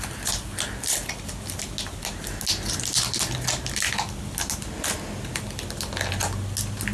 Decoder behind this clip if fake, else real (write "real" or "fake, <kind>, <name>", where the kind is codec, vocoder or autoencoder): real